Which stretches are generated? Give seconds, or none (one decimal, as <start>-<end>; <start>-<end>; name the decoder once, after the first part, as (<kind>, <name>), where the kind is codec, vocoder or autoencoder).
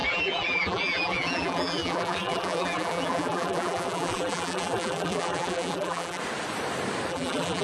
0.0-6.2 (vocoder, BigVGAN v2); 7.1-7.6